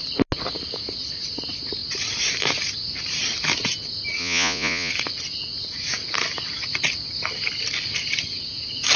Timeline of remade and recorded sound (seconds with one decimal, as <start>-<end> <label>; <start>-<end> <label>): 0.0-4.2 recorded; 4.2-4.9 remade; 4.9-9.0 recorded

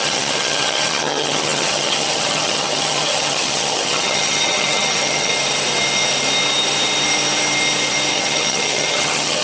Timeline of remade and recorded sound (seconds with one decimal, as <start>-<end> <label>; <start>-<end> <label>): 0.0-5.3 remade; 5.3-8.1 recorded; 8.1-9.4 remade

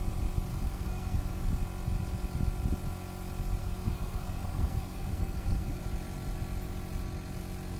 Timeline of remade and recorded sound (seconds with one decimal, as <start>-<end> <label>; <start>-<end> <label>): 0.0-0.5 recorded; 0.5-1.5 remade; 1.5-3.6 recorded; 3.6-5.8 remade; 5.8-7.8 recorded

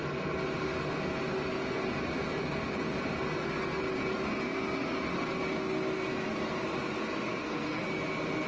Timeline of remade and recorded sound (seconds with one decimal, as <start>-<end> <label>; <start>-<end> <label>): 0.0-7.3 recorded; 7.3-7.8 remade; 7.8-8.5 recorded

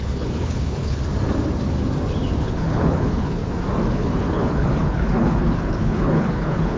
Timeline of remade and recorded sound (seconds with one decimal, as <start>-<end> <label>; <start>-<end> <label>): 0.0-1.0 remade; 1.0-2.4 recorded; 2.4-3.4 remade; 3.4-3.9 recorded; 3.9-6.8 remade

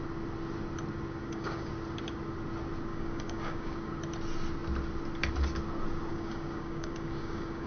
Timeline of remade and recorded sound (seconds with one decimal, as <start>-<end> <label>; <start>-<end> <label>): 0.0-1.2 recorded; 1.2-1.7 remade; 1.7-2.9 recorded; 2.9-3.9 remade; 3.9-6.1 recorded; 6.1-7.7 remade

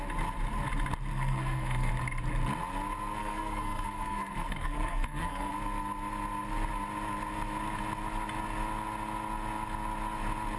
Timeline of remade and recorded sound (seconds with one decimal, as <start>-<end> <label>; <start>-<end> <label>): 0.0-1.1 recorded; 1.1-1.9 remade; 1.9-3.2 recorded; 3.2-5.5 remade; 5.5-10.6 recorded